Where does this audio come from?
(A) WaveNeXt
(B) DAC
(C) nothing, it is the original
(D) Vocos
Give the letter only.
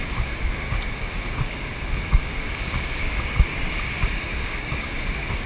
B